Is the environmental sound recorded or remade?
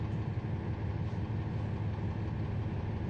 recorded